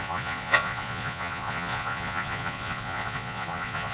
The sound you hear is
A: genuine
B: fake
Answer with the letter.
B